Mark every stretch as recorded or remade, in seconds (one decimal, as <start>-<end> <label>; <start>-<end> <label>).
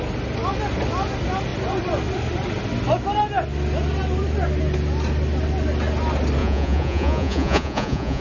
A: 0.0-6.4 recorded; 6.4-8.2 remade